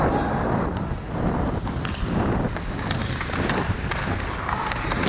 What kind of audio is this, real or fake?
real